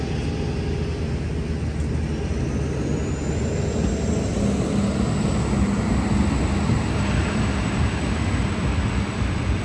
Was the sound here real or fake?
real